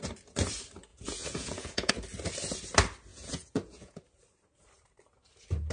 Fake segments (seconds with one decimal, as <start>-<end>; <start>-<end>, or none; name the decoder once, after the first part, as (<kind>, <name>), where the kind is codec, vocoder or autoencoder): 0.9-1.9 (vocoder, Vocos); 3.1-4.0